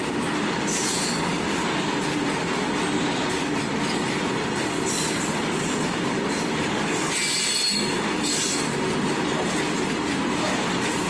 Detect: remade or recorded recorded